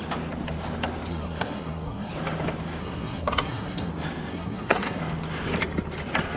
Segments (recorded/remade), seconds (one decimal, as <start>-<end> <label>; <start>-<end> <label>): 0.0-1.1 recorded; 1.1-2.1 remade; 2.1-2.8 recorded; 2.8-3.9 remade; 3.9-4.3 recorded; 4.3-5.0 remade; 5.0-6.4 recorded